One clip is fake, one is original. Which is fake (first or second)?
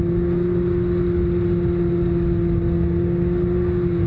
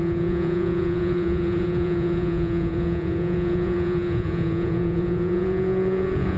second